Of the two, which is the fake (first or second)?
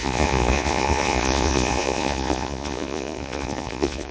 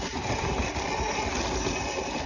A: first